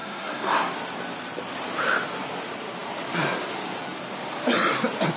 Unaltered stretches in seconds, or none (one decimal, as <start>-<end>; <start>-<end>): 0.7-5.2